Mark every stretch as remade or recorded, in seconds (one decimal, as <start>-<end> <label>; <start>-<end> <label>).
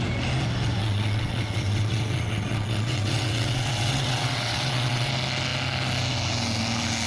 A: 0.0-0.8 recorded; 0.8-5.1 remade; 5.1-7.1 recorded